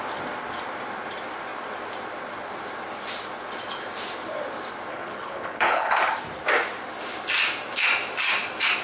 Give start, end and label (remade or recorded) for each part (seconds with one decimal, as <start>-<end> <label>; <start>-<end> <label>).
0.0-4.9 recorded; 4.9-6.0 remade; 6.0-8.8 recorded